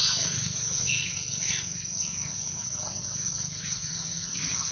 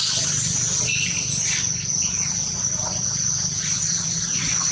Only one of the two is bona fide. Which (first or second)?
second